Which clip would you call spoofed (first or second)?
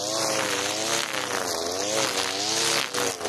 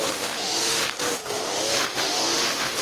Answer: second